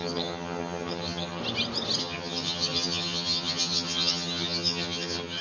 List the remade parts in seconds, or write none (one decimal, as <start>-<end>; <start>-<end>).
0.0-1.4; 2.0-5.4